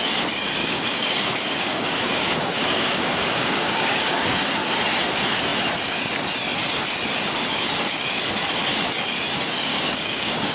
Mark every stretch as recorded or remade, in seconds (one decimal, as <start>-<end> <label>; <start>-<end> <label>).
0.0-0.6 recorded; 0.6-4.2 remade; 4.2-9.7 recorded; 9.7-10.5 remade